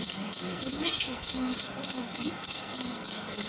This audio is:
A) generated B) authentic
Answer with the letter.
A